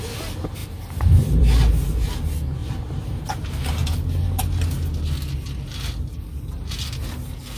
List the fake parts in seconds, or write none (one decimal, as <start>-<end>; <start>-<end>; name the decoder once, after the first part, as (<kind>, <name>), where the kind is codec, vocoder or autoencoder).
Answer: 0.6-1.4 (vocoder, BigVGAN v2); 2.6-3.2